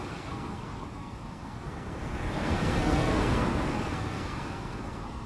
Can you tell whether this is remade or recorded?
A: remade